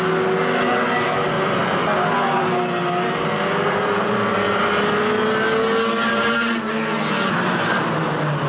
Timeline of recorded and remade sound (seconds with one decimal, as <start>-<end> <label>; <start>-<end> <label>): 0.0-8.5 recorded